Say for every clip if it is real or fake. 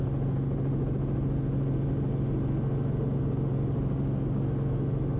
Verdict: real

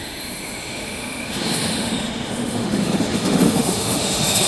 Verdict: fake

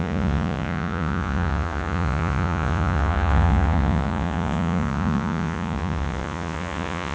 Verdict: fake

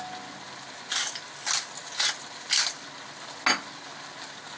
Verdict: real